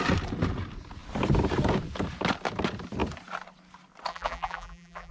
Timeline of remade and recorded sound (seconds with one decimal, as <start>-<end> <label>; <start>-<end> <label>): 0.0-4.1 recorded; 4.1-5.1 remade